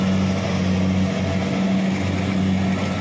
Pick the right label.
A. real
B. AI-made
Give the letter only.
A